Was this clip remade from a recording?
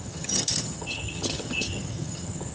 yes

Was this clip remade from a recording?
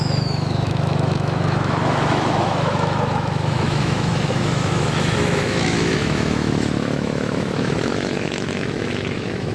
yes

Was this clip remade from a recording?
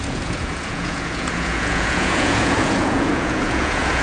yes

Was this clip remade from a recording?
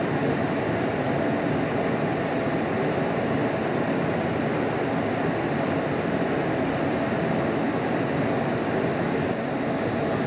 no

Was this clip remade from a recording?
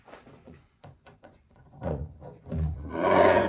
yes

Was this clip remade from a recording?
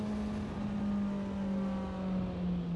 no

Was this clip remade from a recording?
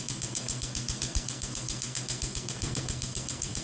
yes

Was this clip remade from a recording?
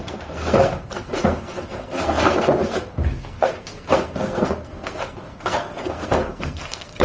yes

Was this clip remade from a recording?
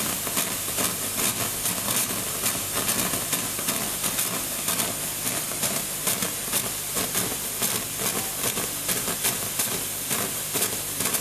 yes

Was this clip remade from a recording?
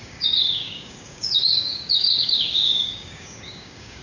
yes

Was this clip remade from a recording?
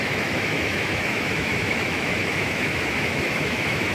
yes